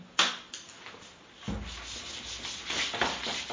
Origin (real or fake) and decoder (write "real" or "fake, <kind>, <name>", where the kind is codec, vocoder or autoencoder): real